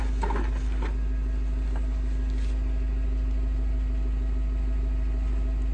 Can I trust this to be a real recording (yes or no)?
yes